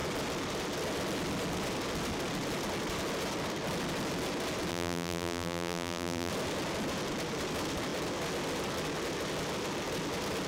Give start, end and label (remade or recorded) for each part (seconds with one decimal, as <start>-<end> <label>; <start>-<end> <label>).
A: 0.0-4.7 recorded; 4.7-6.3 remade; 6.3-10.5 recorded